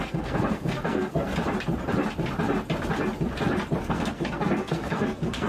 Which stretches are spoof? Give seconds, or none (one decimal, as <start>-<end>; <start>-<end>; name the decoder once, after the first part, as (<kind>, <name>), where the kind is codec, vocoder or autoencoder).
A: 0.0-1.3 (codec, SNAC); 3.8-5.5